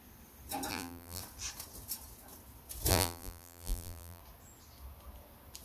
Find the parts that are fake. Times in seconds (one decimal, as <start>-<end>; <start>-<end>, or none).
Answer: 0.7-1.2; 2.9-4.2